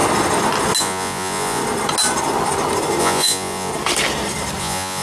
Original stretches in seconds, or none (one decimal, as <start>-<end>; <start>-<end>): 0.0-0.8; 1.6-3.0; 3.7-4.6